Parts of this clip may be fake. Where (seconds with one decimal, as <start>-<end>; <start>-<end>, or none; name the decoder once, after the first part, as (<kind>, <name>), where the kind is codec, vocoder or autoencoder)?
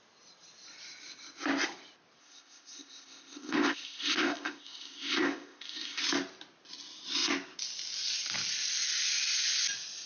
2.2-6.0 (codec, ZipCodec)